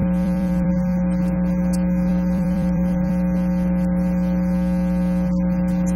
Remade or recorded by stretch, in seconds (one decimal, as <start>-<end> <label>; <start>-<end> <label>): 0.0-0.7 remade; 0.7-2.1 recorded; 2.1-3.1 remade; 3.1-6.0 recorded